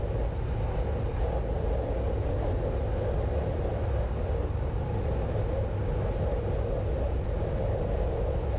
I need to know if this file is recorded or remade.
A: recorded